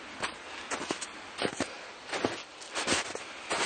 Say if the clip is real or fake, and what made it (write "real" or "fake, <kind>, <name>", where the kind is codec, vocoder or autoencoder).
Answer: real